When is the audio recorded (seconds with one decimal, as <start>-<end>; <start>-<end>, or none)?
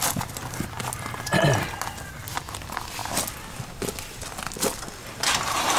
0.0-5.8